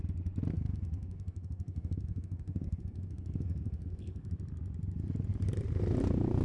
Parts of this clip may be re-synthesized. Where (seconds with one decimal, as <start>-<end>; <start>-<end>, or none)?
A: 0.5-4.3